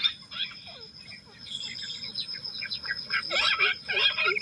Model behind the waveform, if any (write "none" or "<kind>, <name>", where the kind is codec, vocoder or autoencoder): none